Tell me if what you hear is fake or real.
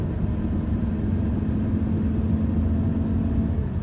real